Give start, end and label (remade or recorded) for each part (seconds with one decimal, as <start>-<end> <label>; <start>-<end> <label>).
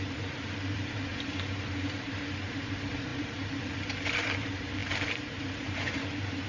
0.0-1.1 remade; 1.1-1.7 recorded; 1.7-6.5 remade